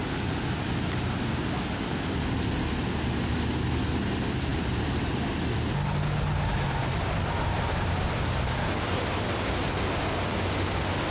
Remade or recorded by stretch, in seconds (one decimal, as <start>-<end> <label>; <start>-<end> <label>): 0.0-4.5 recorded; 4.5-5.1 remade; 5.1-11.1 recorded